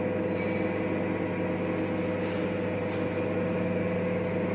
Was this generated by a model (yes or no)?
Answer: no